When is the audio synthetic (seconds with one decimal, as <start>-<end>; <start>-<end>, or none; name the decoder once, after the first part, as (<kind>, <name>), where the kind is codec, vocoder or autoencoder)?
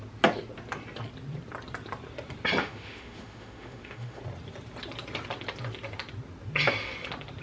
2.6-4.2 (autoencoder, DAC-VAE)